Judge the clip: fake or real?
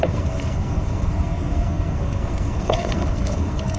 fake